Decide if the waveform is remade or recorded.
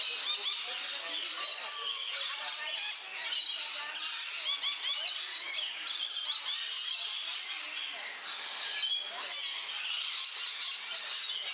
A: recorded